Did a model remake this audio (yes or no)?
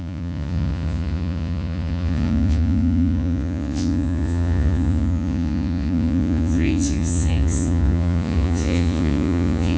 yes